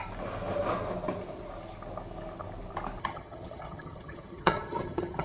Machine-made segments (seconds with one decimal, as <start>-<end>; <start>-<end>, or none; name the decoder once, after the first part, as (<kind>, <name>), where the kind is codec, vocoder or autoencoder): 3.0-5.2 (vocoder, HiFi-GAN)